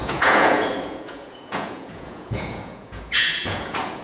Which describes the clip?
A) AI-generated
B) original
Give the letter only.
A